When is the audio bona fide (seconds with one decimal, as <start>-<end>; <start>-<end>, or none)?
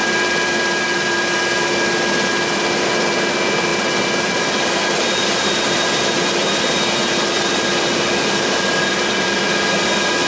1.2-3.7; 6.5-7.0; 9.3-10.3